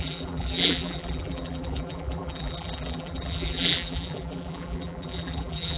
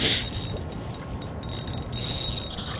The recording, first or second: second